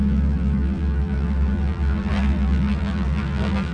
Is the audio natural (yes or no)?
no